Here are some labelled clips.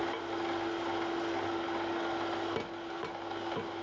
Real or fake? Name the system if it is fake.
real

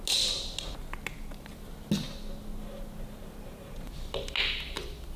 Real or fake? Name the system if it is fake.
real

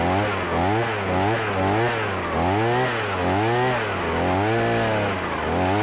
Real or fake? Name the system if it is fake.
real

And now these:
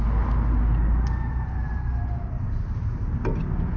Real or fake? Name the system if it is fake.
real